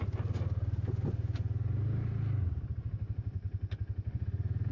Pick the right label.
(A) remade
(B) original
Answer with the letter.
B